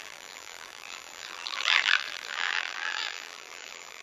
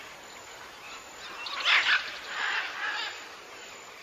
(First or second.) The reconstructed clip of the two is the first